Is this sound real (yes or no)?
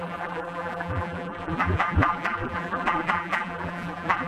no